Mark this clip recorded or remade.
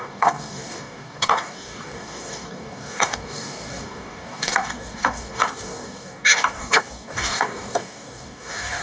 remade